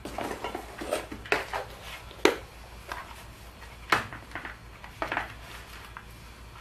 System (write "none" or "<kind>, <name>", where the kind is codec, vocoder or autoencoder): none